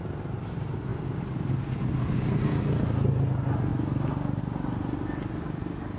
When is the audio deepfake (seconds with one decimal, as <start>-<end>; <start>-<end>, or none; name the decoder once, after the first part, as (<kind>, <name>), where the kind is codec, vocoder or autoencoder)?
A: none